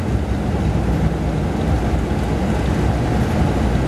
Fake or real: real